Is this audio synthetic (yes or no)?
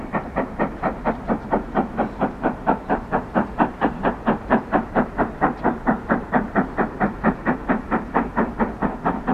yes